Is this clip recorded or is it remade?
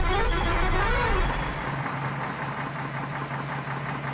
recorded